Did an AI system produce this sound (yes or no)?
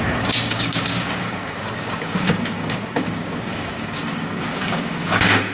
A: yes